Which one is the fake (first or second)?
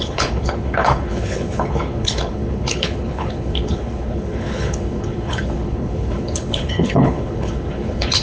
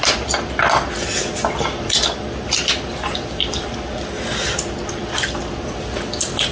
first